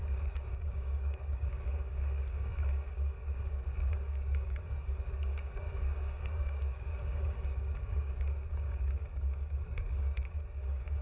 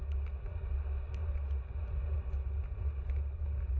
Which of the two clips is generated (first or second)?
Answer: first